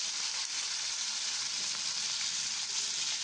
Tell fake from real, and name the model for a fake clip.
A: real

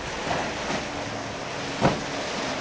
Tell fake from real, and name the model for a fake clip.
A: real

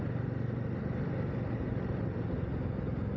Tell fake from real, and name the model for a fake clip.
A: real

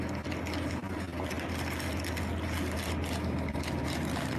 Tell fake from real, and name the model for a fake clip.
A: real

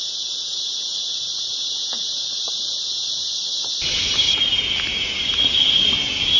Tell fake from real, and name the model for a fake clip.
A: real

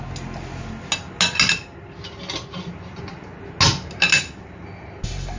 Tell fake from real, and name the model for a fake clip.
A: real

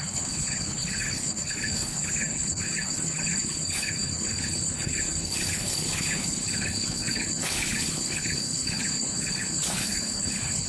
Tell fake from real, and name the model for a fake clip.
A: fake, codec, HILCodec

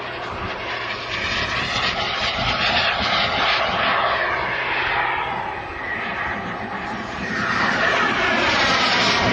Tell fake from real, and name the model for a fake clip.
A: real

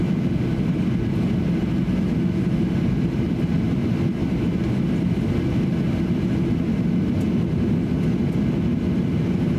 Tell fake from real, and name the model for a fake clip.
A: real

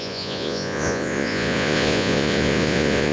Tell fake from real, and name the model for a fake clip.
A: fake, vocoder, Vocos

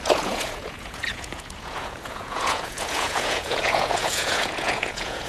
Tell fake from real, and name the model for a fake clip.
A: fake, vocoder, Vocos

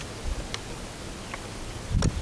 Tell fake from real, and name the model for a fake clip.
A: real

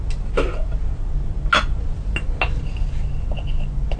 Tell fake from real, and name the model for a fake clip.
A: real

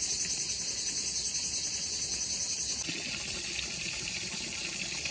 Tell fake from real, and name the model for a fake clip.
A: real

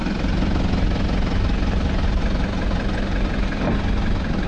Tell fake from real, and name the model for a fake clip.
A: real